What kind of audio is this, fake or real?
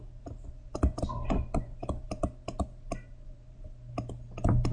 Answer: real